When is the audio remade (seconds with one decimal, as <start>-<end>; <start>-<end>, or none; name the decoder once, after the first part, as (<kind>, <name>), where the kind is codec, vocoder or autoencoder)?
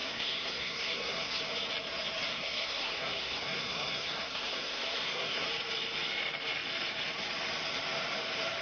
0.0-1.4 (codec, SNAC); 2.3-5.5